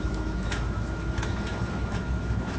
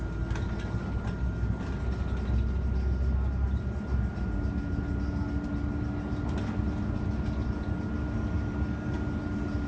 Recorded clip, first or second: second